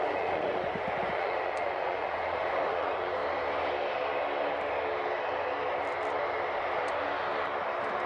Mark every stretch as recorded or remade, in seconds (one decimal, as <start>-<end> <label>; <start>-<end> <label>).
0.0-3.2 remade; 3.2-8.1 recorded